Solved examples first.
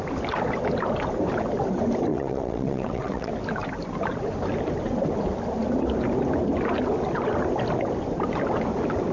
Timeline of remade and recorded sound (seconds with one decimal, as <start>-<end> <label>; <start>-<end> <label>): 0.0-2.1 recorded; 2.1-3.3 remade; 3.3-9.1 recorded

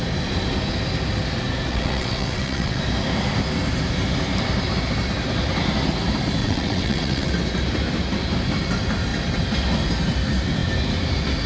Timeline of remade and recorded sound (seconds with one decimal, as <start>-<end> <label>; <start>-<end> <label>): 0.0-1.7 recorded; 1.7-2.8 remade; 2.8-6.4 recorded; 6.4-7.3 remade; 7.3-11.5 recorded

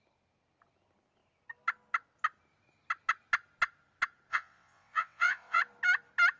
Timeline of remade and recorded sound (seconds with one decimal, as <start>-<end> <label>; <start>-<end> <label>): 0.0-4.3 recorded; 4.3-5.6 remade; 5.6-6.4 recorded

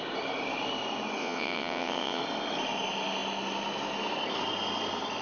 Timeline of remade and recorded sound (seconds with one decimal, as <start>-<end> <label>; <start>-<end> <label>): 0.0-1.2 recorded; 1.2-2.2 remade; 2.2-5.2 recorded

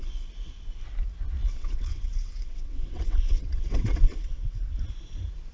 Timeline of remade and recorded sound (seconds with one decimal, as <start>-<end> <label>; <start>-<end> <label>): 0.0-1.4 recorded; 1.4-4.7 remade; 4.7-5.5 recorded

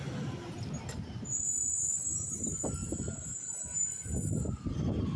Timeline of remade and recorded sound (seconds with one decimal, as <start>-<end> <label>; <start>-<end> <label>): 0.0-5.2 recorded

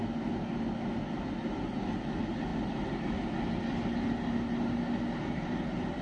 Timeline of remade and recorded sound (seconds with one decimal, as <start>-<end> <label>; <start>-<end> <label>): 0.0-6.0 recorded